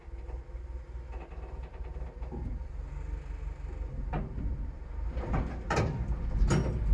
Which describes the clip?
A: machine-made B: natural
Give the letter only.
B